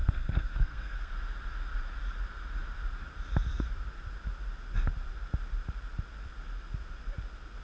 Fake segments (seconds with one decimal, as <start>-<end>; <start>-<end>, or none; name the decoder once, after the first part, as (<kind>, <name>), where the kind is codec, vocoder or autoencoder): 0.0-1.1 (codec, SNAC)